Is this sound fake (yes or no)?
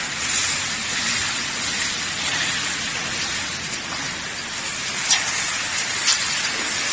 no